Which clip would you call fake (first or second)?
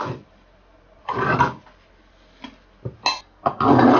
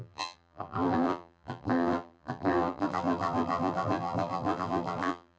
second